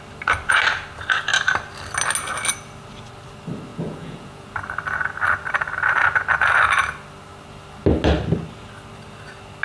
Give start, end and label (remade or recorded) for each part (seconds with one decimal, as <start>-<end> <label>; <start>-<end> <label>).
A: 0.0-3.7 recorded; 3.7-4.5 remade; 4.5-9.6 recorded